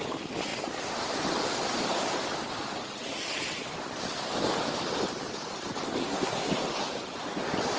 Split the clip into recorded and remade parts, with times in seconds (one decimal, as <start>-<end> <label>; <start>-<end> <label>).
0.0-6.0 recorded; 6.0-6.5 remade; 6.5-7.8 recorded